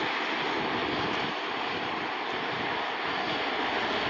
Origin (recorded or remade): recorded